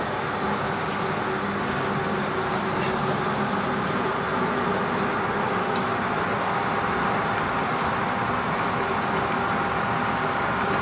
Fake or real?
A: real